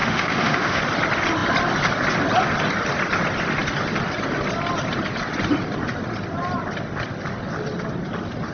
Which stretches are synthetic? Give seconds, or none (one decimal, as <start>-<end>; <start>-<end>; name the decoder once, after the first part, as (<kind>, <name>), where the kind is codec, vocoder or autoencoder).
0.0-0.8 (autoencoder, DAC-VAE)